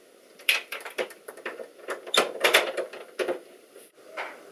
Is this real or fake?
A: fake